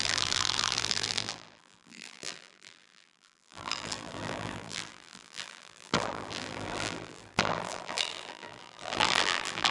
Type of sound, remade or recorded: remade